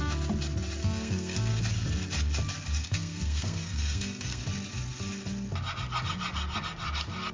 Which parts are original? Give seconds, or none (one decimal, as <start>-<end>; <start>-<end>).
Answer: 0.0-0.8; 1.5-2.8; 4.4-7.3